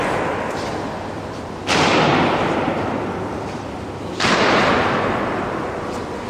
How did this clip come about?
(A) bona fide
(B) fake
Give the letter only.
B